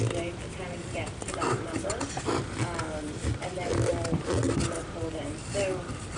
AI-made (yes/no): no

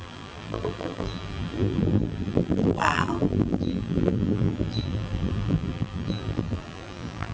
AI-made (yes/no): yes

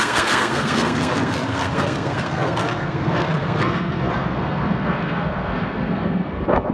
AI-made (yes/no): yes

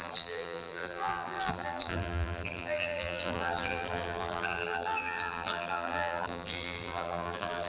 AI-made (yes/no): yes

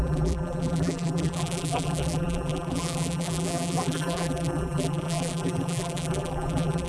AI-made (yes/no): yes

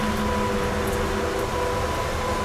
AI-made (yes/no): no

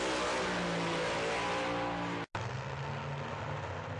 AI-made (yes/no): no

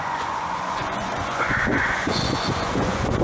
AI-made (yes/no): yes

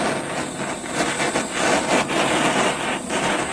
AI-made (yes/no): no